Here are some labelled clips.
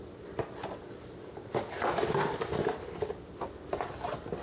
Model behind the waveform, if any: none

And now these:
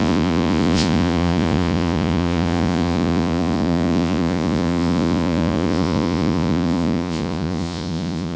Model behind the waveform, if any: vocoder, Vocos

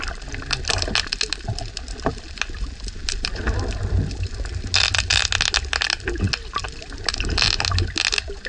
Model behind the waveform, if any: none